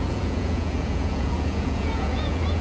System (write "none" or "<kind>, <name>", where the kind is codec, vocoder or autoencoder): vocoder, Vocos